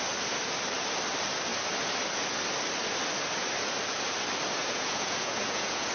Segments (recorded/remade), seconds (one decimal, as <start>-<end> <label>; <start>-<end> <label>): 0.0-4.6 recorded; 4.6-5.9 remade